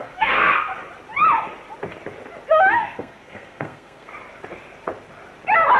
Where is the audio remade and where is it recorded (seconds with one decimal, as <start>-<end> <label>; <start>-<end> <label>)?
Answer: 0.0-0.7 remade; 0.7-2.7 recorded; 2.7-4.1 remade; 4.1-5.8 recorded